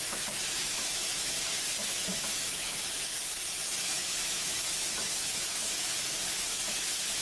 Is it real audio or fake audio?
fake